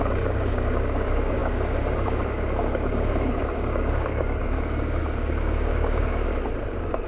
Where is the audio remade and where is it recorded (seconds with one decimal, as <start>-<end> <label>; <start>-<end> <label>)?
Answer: 0.0-6.3 remade; 6.3-7.1 recorded